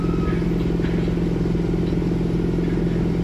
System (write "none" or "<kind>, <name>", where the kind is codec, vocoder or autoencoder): none